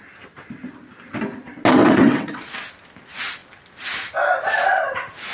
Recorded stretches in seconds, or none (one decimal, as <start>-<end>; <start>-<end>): 0.0-1.8; 2.7-5.3